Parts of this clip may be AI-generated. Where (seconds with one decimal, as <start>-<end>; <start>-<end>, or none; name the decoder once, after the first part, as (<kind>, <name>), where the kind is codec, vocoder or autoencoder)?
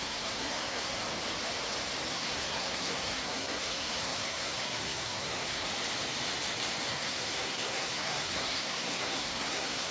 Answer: 0.0-1.0 (codec, SNAC); 2.1-5.7; 6.9-9.9